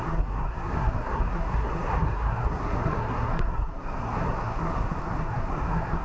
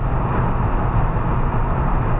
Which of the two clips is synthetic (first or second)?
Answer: first